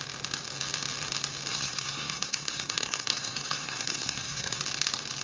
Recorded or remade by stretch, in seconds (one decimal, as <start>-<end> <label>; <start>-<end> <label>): 0.0-1.5 recorded; 1.5-4.6 remade; 4.6-5.2 recorded